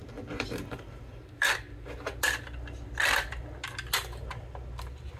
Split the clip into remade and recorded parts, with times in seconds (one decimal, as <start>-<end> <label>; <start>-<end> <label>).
0.0-1.5 remade; 1.5-5.2 recorded